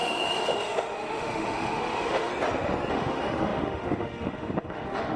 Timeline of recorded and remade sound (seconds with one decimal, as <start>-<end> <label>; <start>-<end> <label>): 0.0-2.3 remade; 2.3-2.9 recorded; 2.9-5.2 remade